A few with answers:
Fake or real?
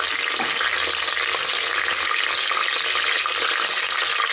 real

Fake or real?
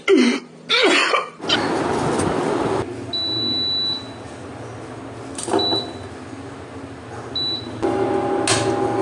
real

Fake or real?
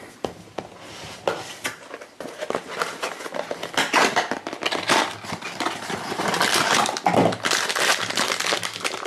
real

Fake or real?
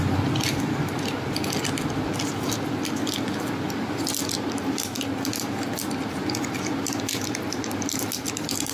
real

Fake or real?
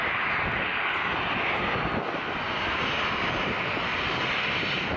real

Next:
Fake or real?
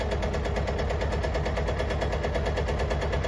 real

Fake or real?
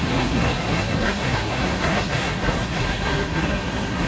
fake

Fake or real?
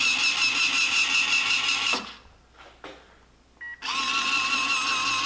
real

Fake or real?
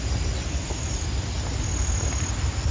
real